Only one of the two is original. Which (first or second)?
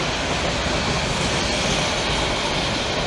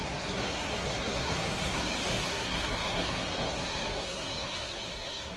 first